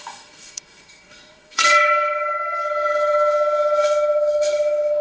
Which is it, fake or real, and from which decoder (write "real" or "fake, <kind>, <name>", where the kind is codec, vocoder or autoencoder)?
fake, codec, SNAC